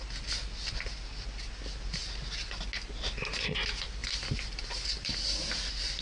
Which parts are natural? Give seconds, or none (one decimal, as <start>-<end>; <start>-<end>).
0.0-4.0; 5.2-6.0